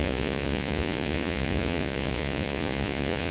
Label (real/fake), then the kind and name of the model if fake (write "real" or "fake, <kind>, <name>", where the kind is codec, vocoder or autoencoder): fake, vocoder, Vocos